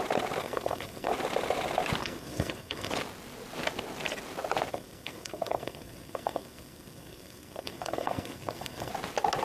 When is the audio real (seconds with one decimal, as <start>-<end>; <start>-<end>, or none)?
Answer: 0.0-0.4; 1.1-2.0; 2.9-4.7; 8.9-9.4